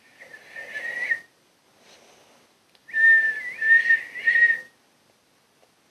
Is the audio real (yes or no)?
yes